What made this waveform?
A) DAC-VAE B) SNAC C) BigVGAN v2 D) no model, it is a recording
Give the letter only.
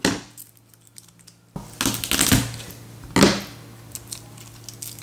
D